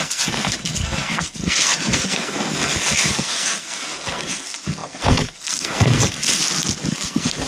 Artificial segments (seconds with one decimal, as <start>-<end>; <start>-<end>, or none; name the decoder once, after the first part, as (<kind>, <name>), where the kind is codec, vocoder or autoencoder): 0.0-6.4 (codec, SNAC); 6.9-7.5